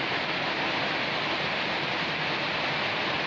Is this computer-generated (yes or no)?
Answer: no